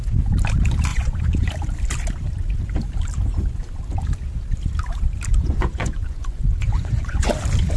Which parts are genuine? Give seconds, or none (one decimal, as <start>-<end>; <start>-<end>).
0.0-0.9; 1.5-5.3; 7.3-7.8